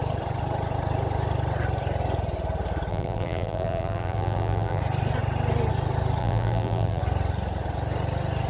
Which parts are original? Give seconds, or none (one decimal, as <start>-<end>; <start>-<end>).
0.0-2.9; 4.8-6.2; 7.0-8.5